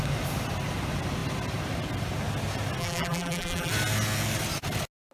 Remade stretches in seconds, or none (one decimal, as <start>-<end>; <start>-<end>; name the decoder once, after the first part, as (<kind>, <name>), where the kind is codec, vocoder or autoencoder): 2.8-3.7 (vocoder, BigVGAN v2)